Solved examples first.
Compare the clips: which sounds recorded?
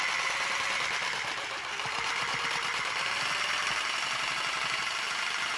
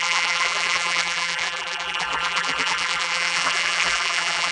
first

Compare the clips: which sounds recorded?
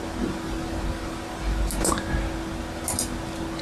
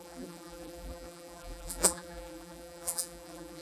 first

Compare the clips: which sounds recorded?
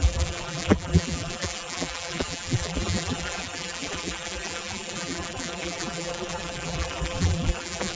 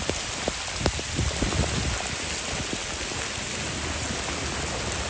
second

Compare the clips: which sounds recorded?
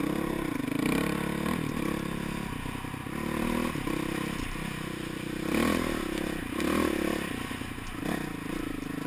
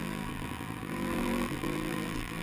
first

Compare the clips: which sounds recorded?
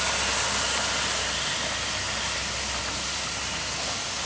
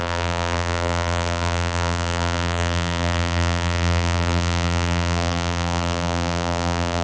first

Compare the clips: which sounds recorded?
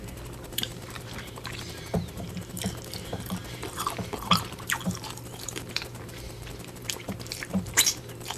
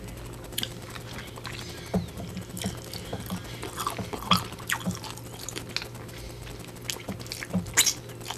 second